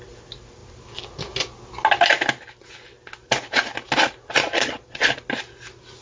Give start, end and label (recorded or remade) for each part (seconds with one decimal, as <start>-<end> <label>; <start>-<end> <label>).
0.0-4.4 recorded; 4.4-5.1 remade; 5.1-6.0 recorded